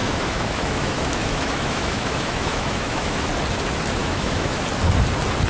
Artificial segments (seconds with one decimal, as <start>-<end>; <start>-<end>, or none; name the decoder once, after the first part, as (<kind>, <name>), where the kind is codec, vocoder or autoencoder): 0.0-3.3 (autoencoder, DAC-VAE); 4.0-4.6